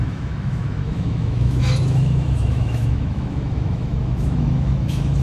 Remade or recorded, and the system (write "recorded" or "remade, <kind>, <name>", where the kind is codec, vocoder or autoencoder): remade, autoencoder, DAC-VAE